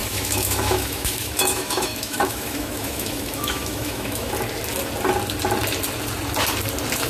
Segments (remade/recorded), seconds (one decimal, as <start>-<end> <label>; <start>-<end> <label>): 0.0-4.3 remade; 4.3-7.1 recorded